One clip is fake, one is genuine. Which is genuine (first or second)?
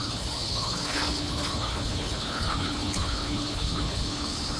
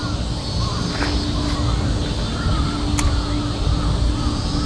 second